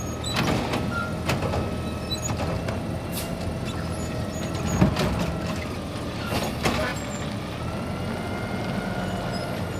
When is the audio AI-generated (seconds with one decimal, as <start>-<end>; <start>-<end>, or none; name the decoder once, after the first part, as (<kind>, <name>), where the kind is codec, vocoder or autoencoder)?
none